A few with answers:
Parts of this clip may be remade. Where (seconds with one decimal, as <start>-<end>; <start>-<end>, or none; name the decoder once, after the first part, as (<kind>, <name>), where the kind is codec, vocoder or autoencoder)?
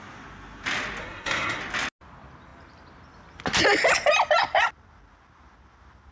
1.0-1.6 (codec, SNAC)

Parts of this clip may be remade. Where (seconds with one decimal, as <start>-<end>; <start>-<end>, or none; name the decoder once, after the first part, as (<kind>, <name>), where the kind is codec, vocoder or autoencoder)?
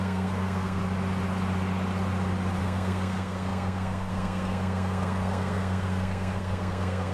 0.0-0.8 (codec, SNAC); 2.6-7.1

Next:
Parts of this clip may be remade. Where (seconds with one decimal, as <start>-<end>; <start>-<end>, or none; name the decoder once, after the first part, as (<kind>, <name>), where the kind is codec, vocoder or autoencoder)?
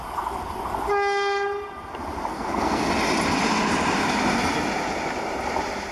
2.3-2.9 (codec, SNAC)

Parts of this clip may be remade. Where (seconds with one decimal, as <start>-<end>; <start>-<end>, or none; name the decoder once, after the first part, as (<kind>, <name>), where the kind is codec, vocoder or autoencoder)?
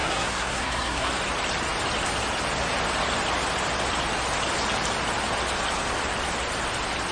0.0-1.1 (codec, SNAC)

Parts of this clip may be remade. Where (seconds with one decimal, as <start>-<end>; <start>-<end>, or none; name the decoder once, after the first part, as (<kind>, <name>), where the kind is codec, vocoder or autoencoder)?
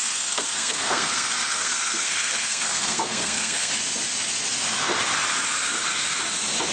0.0-3.7 (codec, SNAC)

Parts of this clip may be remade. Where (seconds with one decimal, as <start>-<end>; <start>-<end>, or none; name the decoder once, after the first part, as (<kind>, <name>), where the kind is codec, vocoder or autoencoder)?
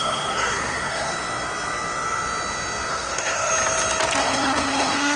0.0-1.1 (codec, SNAC); 2.9-3.5; 4.2-5.2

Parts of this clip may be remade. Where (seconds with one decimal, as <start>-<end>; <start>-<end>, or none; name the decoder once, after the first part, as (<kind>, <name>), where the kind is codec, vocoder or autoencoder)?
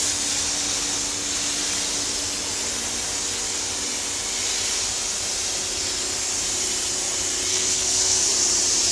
7.5-8.2 (codec, SNAC)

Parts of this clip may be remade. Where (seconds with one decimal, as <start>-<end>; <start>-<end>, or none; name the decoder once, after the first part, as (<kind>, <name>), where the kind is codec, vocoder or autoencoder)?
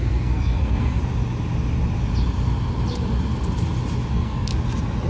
0.0-1.0 (codec, SNAC); 4.1-4.5